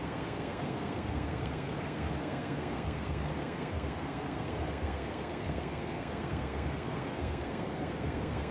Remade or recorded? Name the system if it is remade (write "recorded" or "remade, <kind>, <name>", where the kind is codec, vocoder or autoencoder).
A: remade, codec, SNAC